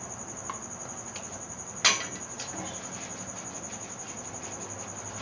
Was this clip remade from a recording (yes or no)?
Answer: no